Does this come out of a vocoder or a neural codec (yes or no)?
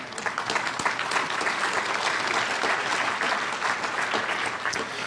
no